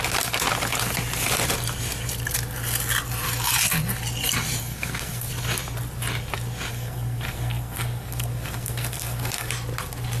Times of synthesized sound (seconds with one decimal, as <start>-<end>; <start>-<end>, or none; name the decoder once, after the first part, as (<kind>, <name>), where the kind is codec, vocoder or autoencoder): 4.6-5.3 (codec, SNAC); 6.7-9.5